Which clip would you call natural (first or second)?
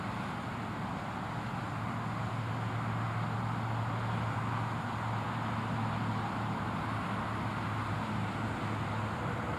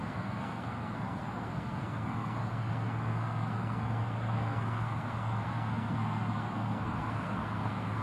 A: first